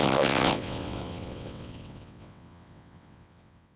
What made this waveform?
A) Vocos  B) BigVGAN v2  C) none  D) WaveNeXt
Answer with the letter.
D